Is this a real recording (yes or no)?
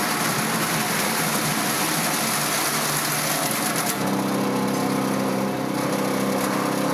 yes